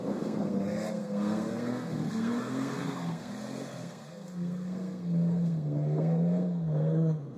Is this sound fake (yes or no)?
yes